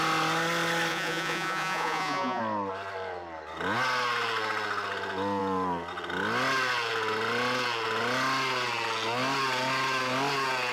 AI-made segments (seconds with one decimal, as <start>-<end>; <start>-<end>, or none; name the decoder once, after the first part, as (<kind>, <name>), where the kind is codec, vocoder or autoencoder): 0.9-2.4 (vocoder, Vocos)